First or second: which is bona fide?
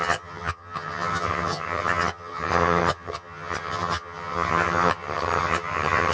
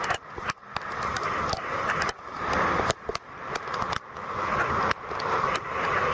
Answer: second